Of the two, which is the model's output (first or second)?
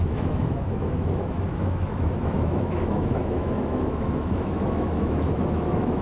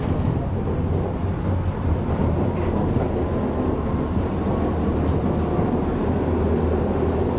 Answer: first